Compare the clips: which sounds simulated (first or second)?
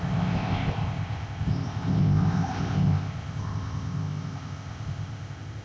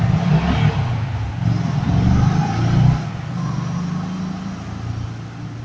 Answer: first